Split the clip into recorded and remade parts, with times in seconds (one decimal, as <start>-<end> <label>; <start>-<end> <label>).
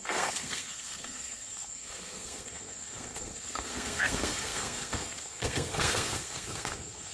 0.0-7.1 remade